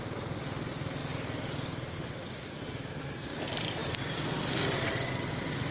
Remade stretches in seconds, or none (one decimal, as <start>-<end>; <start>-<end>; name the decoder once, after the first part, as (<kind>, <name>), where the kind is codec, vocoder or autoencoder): none